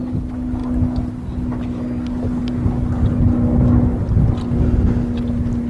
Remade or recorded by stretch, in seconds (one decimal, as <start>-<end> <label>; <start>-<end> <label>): 0.0-5.7 recorded